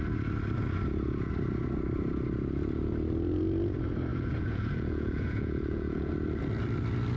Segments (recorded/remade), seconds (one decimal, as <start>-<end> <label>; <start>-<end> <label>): 0.0-4.1 recorded; 4.1-6.1 remade; 6.1-7.2 recorded